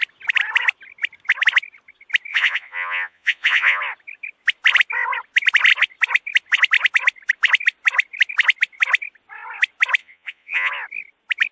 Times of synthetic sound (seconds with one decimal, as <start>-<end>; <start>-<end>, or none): 2.3-3.8; 10.0-10.7

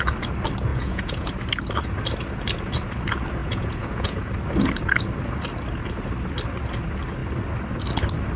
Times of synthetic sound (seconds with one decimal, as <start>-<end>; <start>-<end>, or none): 0.7-1.3; 3.4-4.3

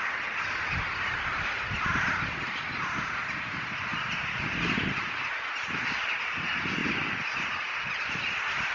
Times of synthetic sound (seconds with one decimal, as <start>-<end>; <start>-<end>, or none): none

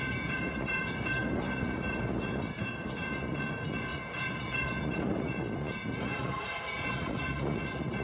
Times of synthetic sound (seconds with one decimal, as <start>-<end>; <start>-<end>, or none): 0.0-8.0

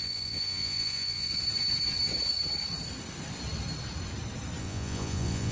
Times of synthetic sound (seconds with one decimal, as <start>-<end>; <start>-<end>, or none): 0.0-1.3; 4.6-5.5

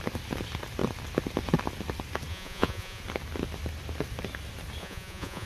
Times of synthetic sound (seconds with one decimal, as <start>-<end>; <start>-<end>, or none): 2.3-3.0; 4.8-5.5

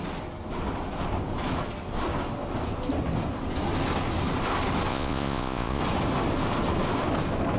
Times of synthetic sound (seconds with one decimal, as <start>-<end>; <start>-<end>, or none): 4.9-5.8